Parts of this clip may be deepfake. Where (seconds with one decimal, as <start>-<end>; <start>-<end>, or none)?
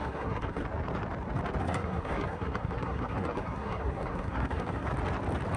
0.0-0.6; 1.6-4.9